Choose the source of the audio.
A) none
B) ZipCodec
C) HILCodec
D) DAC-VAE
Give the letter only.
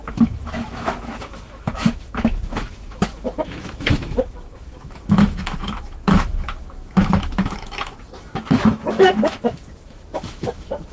D